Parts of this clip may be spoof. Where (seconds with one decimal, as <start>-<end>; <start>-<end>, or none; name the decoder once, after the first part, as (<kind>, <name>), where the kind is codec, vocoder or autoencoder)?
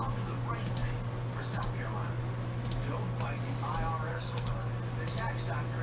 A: 4.1-4.7 (codec, SNAC)